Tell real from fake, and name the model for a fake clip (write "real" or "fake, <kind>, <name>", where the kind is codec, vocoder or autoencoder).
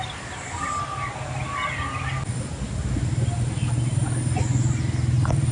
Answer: real